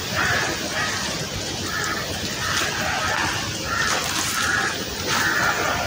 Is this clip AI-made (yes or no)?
no